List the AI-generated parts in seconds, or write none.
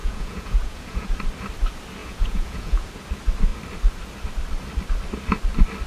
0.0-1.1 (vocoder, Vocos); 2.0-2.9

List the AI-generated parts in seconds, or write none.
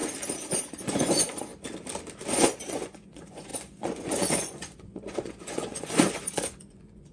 0.7-1.5 (vocoder, Vocos); 2.3-7.1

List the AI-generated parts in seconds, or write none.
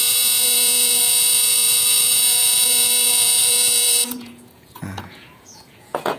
0.0-6.2 (vocoder, Vocos)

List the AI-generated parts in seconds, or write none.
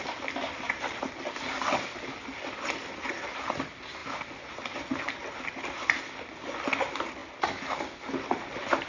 none